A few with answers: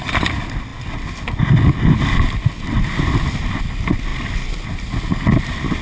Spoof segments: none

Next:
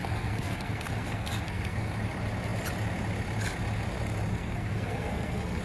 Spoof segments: 0.0-1.9; 4.3-5.6

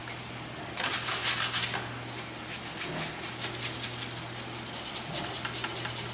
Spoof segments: none

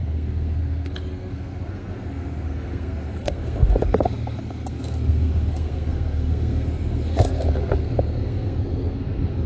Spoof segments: 0.0-9.5